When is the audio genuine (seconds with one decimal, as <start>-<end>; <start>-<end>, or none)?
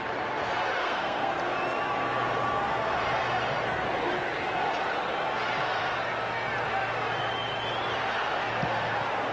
0.0-0.8; 1.3-9.3